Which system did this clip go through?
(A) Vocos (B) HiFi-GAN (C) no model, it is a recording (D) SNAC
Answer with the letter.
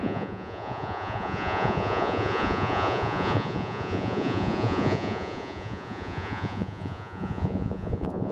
A